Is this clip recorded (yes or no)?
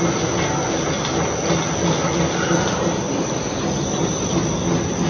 yes